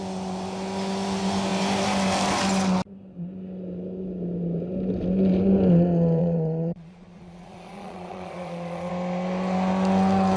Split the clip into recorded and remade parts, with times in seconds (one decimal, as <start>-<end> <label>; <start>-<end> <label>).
0.0-6.2 recorded; 6.2-8.9 remade; 8.9-10.4 recorded